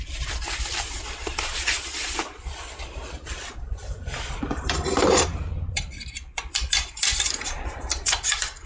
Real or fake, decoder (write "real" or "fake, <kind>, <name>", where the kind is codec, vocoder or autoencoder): fake, vocoder, BigVGAN v2